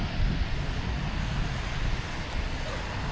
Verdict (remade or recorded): recorded